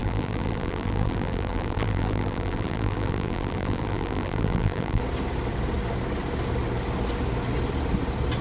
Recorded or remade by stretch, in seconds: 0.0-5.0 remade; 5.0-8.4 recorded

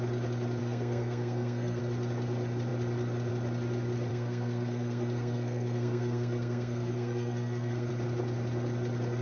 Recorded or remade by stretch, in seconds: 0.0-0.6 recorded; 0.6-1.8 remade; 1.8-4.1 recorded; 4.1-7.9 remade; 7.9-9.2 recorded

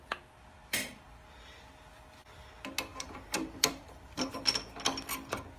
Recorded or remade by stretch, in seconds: 0.0-2.9 recorded; 2.9-4.3 remade; 4.3-5.6 recorded

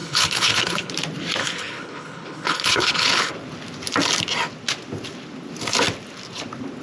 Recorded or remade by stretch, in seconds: 0.0-0.9 remade; 0.9-1.4 recorded; 1.4-3.3 remade; 3.3-6.8 recorded